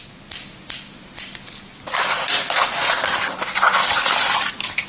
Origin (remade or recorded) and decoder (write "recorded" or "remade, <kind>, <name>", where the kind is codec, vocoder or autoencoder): recorded